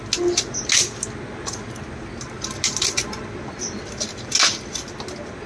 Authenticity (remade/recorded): recorded